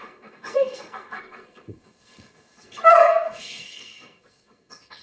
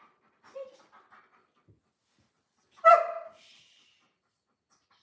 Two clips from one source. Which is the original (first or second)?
second